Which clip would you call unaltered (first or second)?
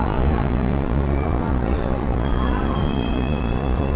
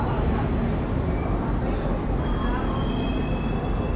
second